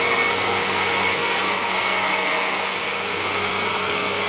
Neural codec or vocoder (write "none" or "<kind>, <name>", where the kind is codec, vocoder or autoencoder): codec, SNAC